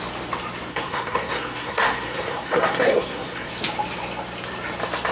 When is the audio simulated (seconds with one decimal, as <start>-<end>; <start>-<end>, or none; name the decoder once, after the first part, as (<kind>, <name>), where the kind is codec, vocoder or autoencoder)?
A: 0.7-3.5 (codec, SNAC)